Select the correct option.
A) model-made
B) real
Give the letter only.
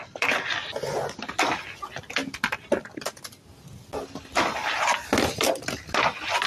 B